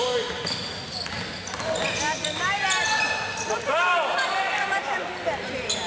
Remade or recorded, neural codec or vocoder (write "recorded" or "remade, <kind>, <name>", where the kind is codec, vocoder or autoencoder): recorded